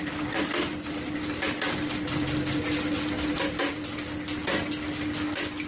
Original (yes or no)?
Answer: yes